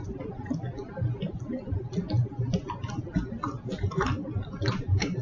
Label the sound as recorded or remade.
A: recorded